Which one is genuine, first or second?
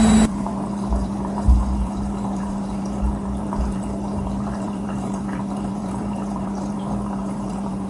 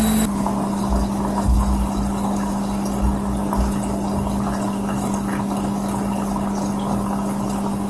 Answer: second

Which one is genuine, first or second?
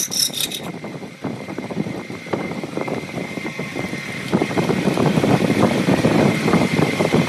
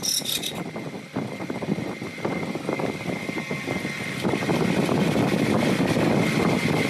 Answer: second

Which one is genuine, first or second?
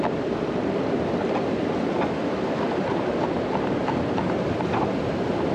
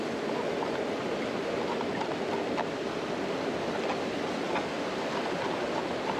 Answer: second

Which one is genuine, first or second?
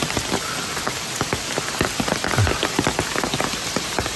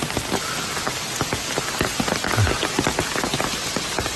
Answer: second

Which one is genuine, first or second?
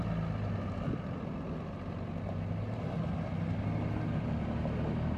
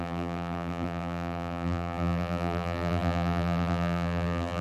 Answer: first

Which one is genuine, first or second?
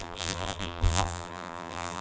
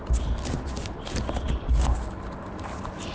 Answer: second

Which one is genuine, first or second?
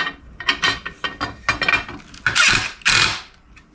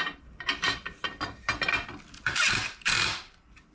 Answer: first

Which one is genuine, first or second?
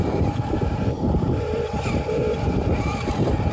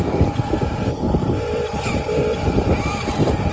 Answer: second